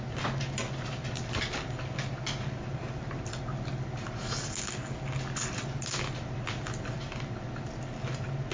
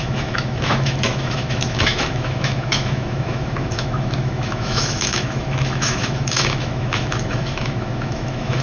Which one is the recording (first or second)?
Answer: first